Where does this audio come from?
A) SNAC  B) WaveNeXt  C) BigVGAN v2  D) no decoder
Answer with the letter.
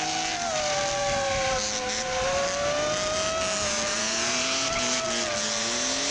D